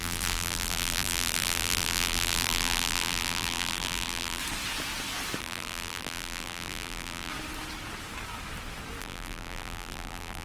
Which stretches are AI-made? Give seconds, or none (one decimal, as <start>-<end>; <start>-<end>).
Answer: 0.0-4.4; 5.4-7.3; 9.0-10.4

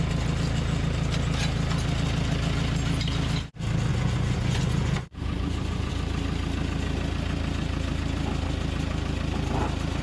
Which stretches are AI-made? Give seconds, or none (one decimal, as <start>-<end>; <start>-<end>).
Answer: 3.9-5.9

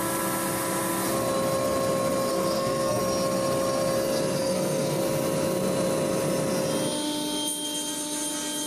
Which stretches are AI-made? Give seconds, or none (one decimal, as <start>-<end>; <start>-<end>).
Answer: 2.3-3.0; 4.4-5.0